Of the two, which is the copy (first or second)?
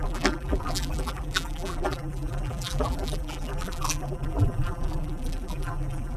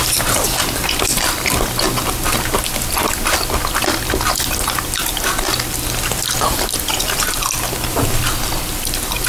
first